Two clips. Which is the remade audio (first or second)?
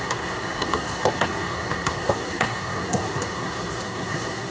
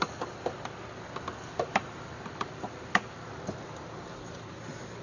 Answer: first